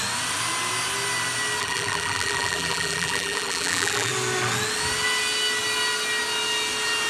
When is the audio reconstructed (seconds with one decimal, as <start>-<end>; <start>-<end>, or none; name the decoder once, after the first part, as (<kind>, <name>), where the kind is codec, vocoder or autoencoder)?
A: 1.6-4.1 (vocoder, BigVGAN v2)